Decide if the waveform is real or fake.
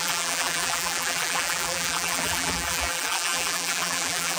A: fake